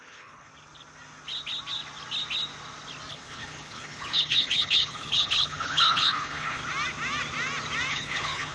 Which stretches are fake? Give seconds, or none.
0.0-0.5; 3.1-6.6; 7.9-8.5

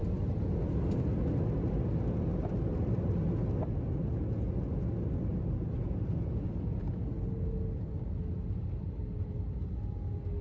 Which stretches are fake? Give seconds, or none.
2.3-3.3; 5.3-5.9

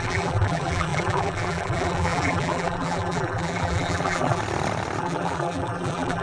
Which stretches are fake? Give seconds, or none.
0.0-4.4; 5.0-6.2

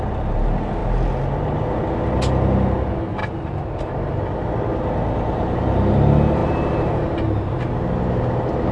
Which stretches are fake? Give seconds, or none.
3.2-3.7

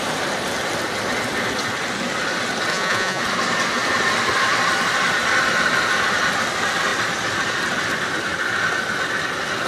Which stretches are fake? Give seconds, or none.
2.7-3.2

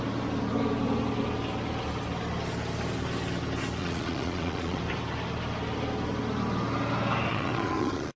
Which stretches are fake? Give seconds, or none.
3.8-4.8; 7.3-8.2

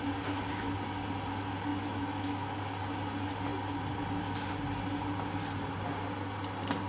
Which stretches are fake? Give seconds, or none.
1.7-2.6